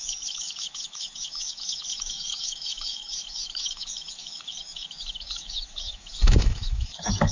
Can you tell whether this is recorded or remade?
remade